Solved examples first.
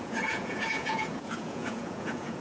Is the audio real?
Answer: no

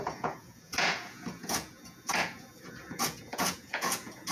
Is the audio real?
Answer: no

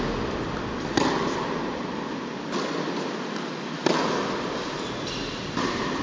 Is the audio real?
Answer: yes